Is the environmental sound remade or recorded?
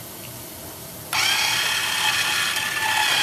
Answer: recorded